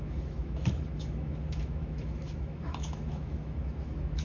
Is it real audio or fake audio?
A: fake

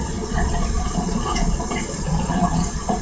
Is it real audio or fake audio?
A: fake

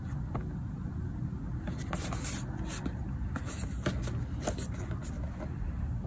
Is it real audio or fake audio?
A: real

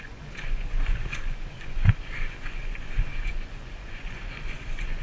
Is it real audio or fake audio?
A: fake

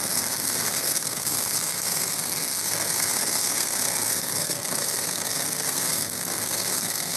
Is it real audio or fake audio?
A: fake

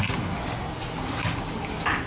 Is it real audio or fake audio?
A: real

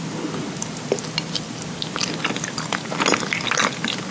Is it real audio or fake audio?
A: real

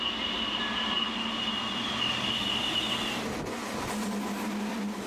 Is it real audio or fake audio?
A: real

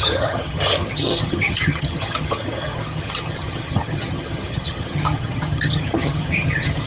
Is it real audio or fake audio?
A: fake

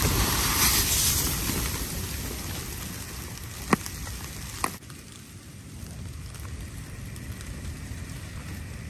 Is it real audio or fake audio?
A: real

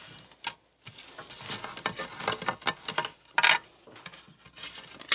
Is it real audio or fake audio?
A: real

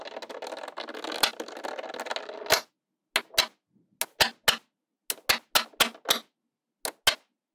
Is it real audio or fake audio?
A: real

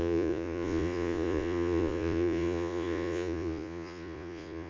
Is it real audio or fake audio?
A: fake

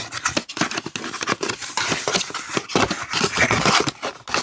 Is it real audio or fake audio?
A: real